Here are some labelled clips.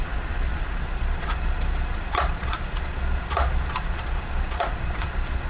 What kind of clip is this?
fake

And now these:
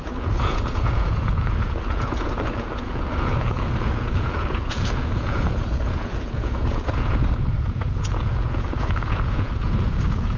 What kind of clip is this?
fake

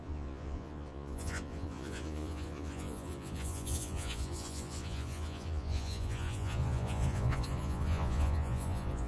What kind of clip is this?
fake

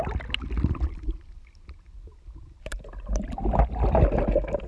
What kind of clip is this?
real